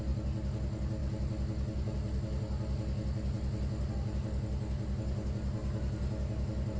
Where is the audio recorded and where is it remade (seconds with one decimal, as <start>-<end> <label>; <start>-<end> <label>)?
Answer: 0.0-6.8 recorded

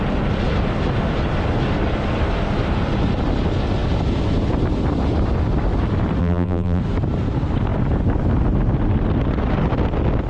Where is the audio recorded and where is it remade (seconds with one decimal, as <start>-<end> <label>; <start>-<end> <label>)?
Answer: 0.0-6.2 recorded; 6.2-6.8 remade; 6.8-10.3 recorded

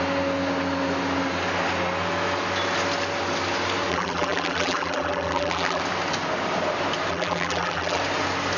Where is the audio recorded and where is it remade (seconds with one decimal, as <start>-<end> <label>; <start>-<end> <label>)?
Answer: 0.0-3.9 recorded; 3.9-5.8 remade; 5.8-7.1 recorded; 7.1-8.0 remade; 8.0-8.6 recorded